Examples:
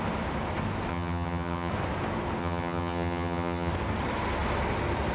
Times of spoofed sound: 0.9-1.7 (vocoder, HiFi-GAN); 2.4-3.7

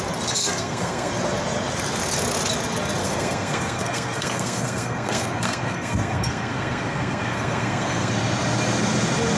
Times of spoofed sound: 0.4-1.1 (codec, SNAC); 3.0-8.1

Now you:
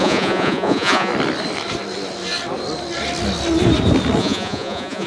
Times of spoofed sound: 0.0-1.1 (vocoder, Vocos); 4.2-5.1

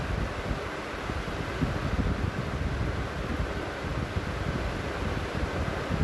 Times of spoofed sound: 3.3-3.9 (vocoder, BigVGAN v2)

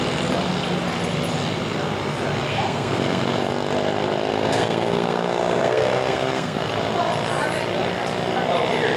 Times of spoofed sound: 2.5-3.5 (codec, SNAC); 4.3-6.7